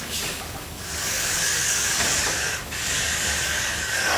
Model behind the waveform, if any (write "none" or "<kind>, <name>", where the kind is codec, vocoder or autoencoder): codec, DAC